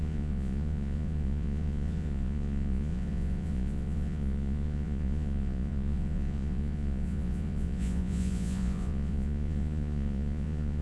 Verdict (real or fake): fake